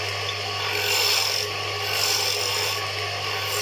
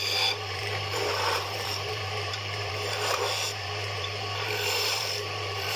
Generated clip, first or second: second